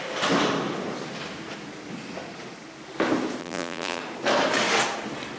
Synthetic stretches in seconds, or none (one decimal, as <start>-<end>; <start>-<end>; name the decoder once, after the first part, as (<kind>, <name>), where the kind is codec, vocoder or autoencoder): 3.4-4.0 (vocoder, BigVGAN v2)